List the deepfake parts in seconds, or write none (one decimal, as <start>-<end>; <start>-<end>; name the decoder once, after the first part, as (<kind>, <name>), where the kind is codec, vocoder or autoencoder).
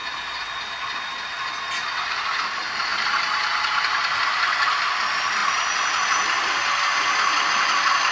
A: 0.0-0.6 (vocoder, BigVGAN v2)